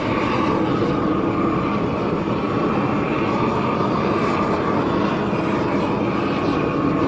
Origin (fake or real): real